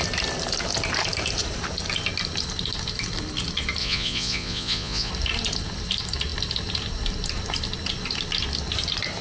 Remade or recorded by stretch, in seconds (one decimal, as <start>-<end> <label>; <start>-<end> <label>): 0.0-3.8 recorded; 3.8-5.1 remade; 5.1-9.2 recorded